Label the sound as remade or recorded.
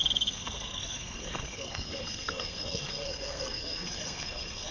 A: remade